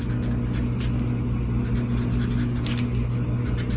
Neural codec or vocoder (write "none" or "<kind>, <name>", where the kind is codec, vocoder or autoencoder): none